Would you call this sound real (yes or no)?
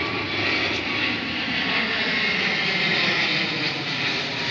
yes